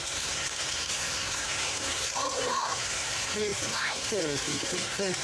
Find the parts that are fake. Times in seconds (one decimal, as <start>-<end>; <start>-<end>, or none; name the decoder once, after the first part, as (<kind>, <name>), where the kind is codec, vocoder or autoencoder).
0.0-5.2 (codec, SNAC)